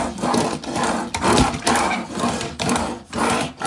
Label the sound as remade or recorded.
recorded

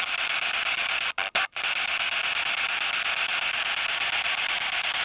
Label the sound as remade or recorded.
recorded